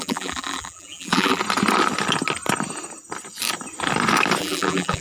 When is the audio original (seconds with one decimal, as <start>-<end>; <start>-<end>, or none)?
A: 1.4-4.4